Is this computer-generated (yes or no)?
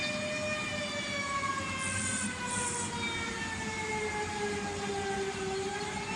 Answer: no